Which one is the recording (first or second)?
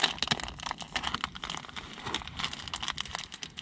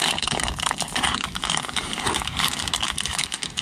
first